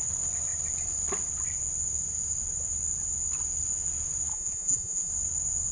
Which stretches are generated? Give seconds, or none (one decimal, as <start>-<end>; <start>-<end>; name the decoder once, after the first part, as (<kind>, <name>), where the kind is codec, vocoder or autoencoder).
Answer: 4.3-5.1 (vocoder, Vocos)